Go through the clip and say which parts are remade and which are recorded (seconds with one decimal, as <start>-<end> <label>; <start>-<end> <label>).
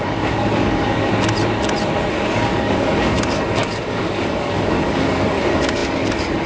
0.0-1.1 remade; 1.1-2.1 recorded; 2.1-6.5 remade